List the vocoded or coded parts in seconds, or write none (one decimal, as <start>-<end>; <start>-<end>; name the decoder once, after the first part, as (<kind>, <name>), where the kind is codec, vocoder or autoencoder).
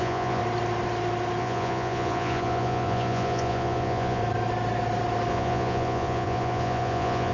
0.0-0.4 (vocoder, Vocos); 1.4-4.2; 5.3-7.3